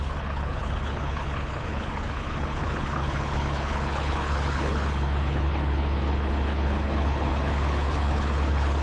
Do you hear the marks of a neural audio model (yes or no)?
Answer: yes